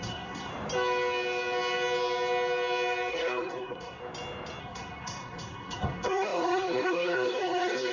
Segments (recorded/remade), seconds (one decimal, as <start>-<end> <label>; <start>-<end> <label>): 0.0-0.5 remade; 0.5-3.1 recorded; 3.1-4.0 remade; 4.0-4.6 recorded; 4.6-7.9 remade